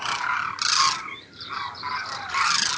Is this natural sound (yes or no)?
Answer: yes